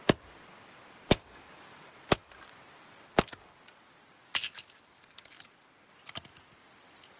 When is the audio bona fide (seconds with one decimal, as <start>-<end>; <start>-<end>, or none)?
0.0-7.2